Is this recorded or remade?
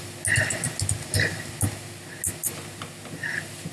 recorded